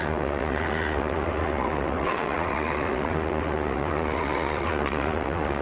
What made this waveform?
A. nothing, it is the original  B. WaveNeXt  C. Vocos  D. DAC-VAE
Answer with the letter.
B